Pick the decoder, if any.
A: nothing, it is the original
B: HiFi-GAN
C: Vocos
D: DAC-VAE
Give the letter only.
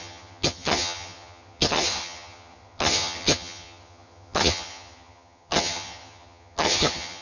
B